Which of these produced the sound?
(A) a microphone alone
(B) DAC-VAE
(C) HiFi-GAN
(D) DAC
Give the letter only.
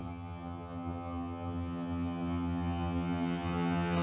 C